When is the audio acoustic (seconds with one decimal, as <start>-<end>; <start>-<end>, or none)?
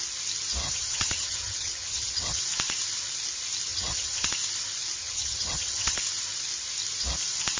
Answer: 0.0-0.6; 2.4-3.7; 4.3-5.0; 6.0-7.6